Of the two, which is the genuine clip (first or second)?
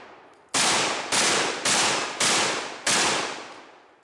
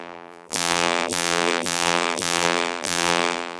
first